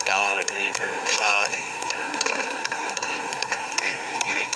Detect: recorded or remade remade